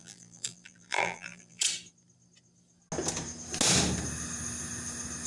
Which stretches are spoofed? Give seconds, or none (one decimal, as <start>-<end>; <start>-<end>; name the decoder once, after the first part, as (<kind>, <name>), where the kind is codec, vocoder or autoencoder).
0.0-1.6 (vocoder, BigVGAN v2)